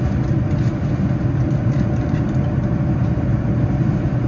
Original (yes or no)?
yes